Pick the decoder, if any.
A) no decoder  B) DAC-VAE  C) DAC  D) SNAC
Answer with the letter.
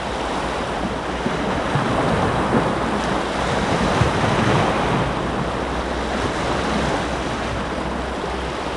A